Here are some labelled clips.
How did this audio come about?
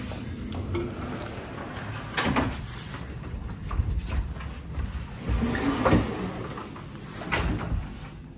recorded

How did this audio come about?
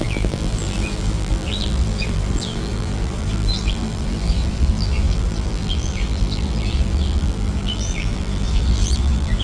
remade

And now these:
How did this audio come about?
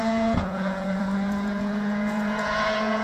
remade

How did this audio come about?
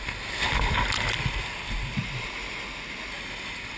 recorded